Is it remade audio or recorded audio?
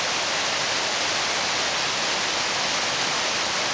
recorded